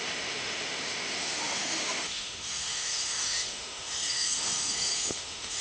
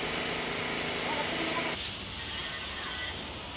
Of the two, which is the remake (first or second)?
first